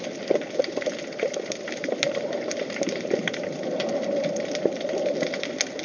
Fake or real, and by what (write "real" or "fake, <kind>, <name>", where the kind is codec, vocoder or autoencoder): real